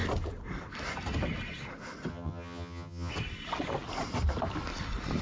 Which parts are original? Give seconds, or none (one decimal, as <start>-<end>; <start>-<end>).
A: 0.0-2.1; 3.1-5.2